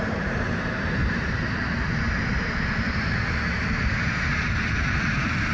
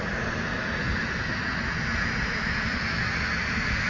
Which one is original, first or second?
second